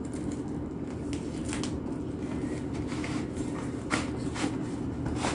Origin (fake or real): real